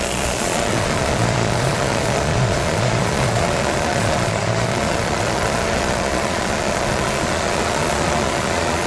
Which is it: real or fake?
fake